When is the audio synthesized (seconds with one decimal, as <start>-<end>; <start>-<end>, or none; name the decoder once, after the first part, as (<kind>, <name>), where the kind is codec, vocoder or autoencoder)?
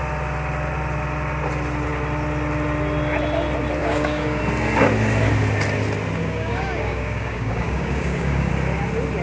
3.8-4.4 (codec, DAC); 6.2-8.5